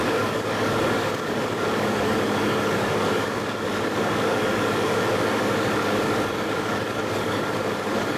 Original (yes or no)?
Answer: no